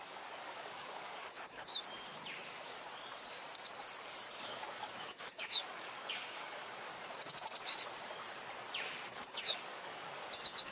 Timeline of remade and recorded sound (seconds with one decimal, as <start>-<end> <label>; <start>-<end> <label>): 0.0-1.7 remade; 1.7-4.4 recorded; 4.4-6.9 remade; 6.9-9.1 recorded; 9.1-10.7 remade

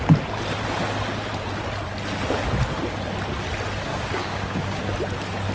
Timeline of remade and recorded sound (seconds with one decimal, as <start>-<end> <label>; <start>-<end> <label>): 0.0-3.9 recorded; 3.9-4.8 remade; 4.8-5.5 recorded

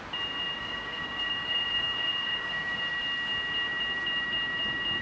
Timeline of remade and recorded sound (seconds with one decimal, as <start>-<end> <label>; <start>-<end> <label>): 0.0-0.6 recorded; 0.6-2.8 remade; 2.8-5.0 recorded

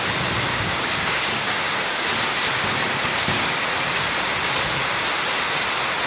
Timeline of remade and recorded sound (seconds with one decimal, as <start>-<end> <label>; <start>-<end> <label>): 0.0-0.5 recorded; 0.5-2.1 remade; 2.1-3.1 recorded; 3.1-3.7 remade; 3.7-6.1 recorded

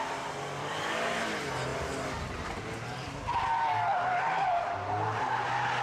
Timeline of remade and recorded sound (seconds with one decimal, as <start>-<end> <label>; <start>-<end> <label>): 0.0-0.6 recorded; 0.6-1.2 remade; 1.2-5.8 recorded

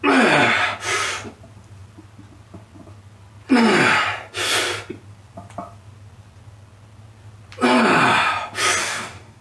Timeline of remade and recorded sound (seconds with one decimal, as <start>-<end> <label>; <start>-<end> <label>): 0.0-8.8 recorded; 8.8-9.4 remade

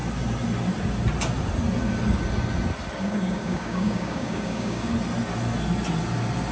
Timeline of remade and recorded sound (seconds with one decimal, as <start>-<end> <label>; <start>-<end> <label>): 0.0-3.0 recorded; 3.0-4.9 remade; 4.9-6.5 recorded